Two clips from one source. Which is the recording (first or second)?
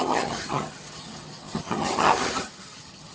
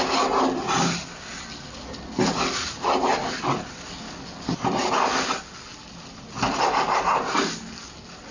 second